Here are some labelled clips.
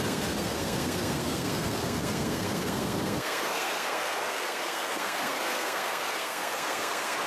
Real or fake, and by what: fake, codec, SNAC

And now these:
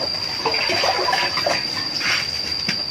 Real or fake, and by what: fake, vocoder, BigVGAN v2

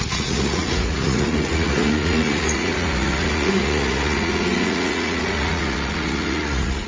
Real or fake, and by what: fake, vocoder, Vocos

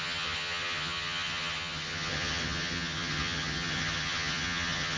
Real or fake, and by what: fake, vocoder, HiFi-GAN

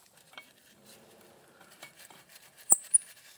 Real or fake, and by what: fake, vocoder, BigVGAN v2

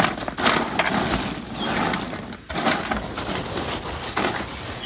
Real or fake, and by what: real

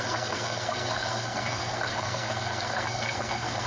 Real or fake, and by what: fake, codec, SNAC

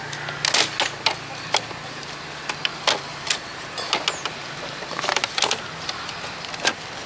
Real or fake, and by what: real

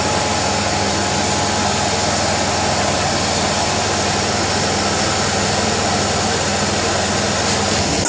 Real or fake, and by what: real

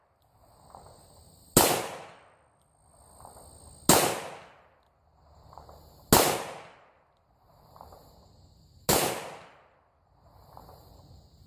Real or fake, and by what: real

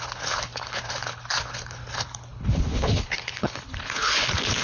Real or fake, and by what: fake, codec, HILCodec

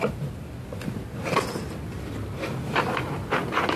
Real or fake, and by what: real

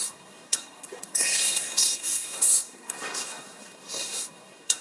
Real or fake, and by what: fake, codec, SNAC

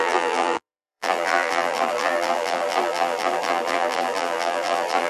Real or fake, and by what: fake, vocoder, BigVGAN v2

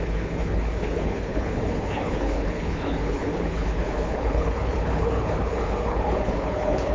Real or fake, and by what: fake, codec, HILCodec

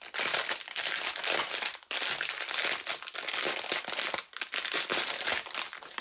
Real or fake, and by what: real